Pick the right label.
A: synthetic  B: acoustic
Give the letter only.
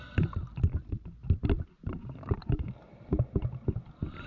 B